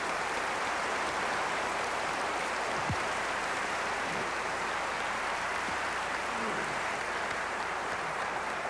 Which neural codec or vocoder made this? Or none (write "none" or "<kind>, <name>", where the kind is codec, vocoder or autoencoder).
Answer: vocoder, BigVGAN v2